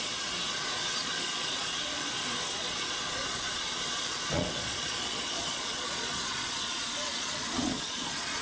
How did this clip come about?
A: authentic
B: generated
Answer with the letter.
B